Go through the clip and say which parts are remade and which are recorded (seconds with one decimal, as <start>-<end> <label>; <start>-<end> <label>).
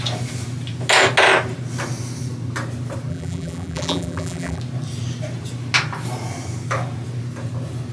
0.0-3.1 recorded; 3.1-4.6 remade; 4.6-7.9 recorded